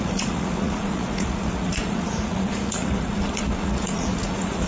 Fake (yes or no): yes